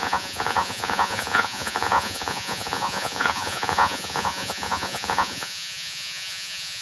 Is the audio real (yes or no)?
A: no